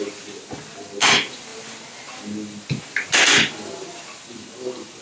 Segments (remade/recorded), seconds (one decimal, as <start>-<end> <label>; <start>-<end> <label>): 0.0-5.0 recorded